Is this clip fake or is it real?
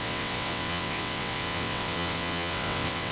fake